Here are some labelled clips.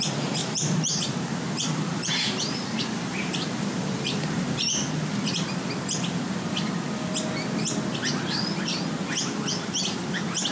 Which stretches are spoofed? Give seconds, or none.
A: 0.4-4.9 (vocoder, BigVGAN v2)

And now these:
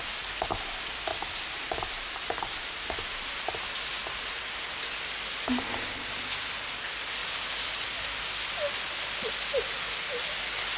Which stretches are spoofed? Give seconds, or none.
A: 1.1-2.7 (vocoder, BigVGAN v2); 7.2-8.2

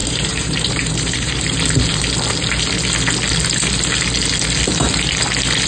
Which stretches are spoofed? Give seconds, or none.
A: 0.0-1.4 (vocoder, BigVGAN v2)

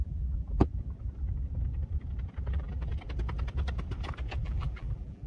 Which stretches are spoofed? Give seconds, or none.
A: 0.0-0.7 (vocoder, BigVGAN v2); 2.5-2.9; 4.4-5.3

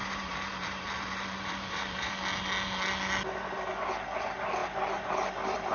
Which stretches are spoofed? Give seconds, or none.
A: 0.0-2.1 (vocoder, BigVGAN v2); 4.6-5.1

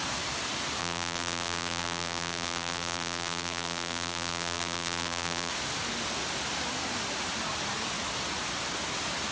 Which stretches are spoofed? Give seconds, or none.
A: 0.8-5.5 (vocoder, BigVGAN v2)